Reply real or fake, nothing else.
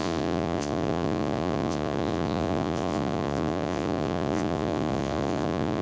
fake